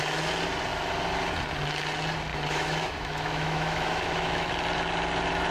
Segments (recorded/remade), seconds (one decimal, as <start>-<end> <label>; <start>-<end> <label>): 0.0-2.3 recorded; 2.3-4.5 remade; 4.5-5.5 recorded